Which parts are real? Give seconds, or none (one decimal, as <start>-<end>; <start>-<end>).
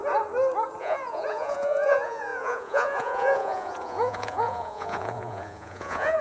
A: 0.0-0.8